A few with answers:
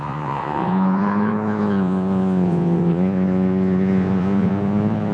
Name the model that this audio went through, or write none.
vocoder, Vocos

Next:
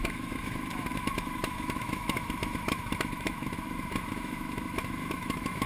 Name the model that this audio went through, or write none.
autoencoder, DAC-VAE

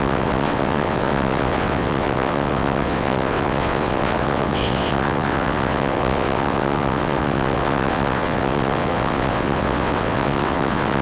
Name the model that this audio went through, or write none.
vocoder, WaveNeXt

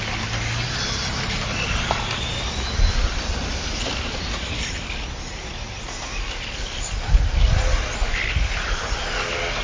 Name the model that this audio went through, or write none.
none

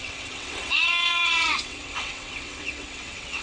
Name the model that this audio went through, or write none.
vocoder, WaveNeXt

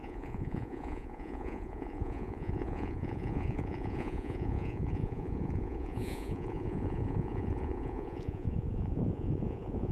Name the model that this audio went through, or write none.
vocoder, Vocos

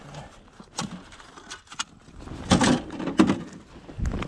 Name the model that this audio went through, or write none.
none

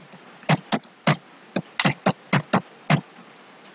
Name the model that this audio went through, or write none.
none